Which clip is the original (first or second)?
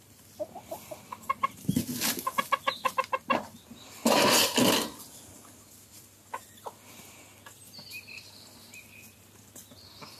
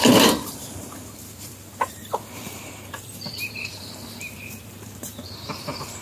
first